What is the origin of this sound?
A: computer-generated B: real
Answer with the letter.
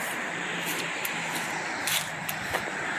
B